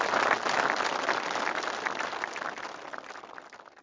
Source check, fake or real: real